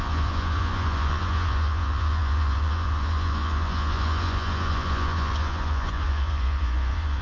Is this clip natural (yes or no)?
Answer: no